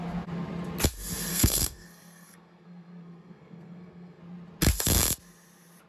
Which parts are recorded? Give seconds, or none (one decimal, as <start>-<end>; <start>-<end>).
0.0-1.3; 4.2-5.9